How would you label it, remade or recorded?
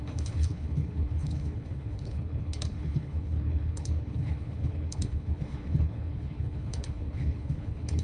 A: remade